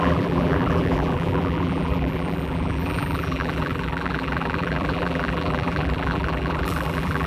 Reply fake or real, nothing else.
fake